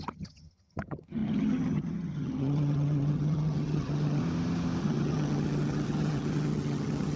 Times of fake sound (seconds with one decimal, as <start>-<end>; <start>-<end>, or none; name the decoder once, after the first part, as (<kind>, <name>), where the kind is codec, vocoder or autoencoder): 0.0-4.2 (vocoder, HiFi-GAN); 4.8-7.2